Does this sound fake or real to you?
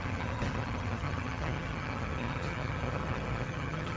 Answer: fake